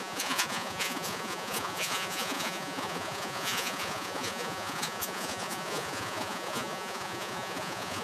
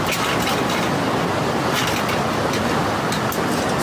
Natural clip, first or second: second